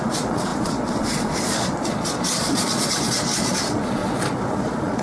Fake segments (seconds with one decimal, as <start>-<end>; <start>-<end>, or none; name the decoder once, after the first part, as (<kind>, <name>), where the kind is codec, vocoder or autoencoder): 0.0-5.0 (vocoder, Vocos)